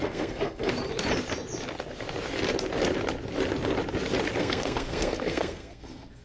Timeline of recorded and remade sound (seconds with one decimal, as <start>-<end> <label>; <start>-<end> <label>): 0.0-0.7 remade; 0.7-4.4 recorded; 4.4-6.2 remade